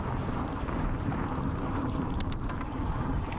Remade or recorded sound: remade